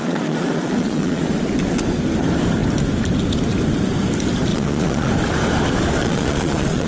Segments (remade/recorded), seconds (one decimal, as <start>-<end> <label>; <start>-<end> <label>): 0.0-1.2 remade; 1.2-4.5 recorded; 4.5-5.1 remade; 5.1-6.0 recorded; 6.0-6.9 remade